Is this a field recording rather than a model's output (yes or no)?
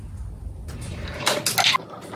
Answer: yes